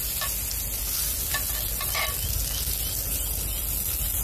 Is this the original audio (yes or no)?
yes